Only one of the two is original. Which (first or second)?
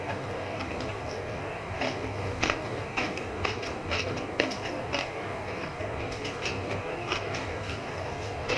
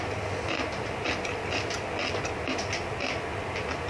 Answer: second